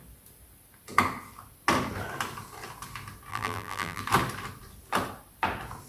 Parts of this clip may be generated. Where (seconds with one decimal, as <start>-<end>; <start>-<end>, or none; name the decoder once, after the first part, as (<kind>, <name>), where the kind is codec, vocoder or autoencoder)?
3.3-4.0 (vocoder, BigVGAN v2)